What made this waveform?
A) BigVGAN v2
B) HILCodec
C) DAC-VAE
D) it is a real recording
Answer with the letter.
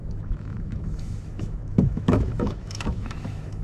C